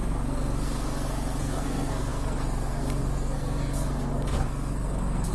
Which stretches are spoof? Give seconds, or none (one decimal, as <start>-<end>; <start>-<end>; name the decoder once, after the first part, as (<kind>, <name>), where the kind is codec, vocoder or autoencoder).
0.0-5.3 (codec, SNAC)